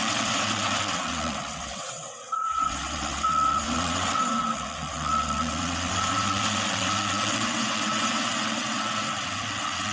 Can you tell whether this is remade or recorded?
remade